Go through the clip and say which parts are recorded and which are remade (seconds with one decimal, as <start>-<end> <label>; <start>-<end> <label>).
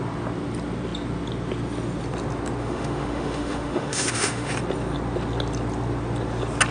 0.0-2.6 recorded; 2.6-4.5 remade; 4.5-6.7 recorded